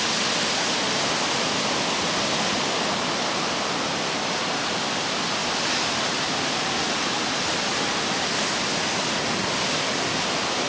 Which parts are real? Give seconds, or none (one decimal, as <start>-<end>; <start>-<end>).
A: 0.0-10.7